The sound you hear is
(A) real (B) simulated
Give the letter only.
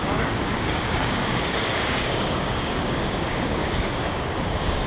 B